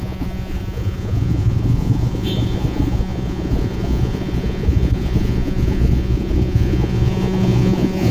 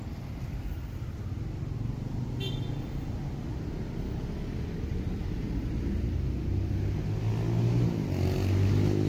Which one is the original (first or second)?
second